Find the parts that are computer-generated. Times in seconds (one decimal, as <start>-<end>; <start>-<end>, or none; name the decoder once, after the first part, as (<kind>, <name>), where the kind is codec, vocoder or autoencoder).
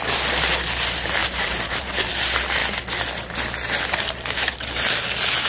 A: 1.2-2.1 (vocoder, BigVGAN v2)